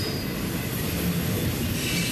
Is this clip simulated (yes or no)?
no